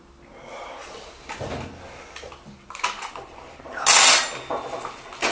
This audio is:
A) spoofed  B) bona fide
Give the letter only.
B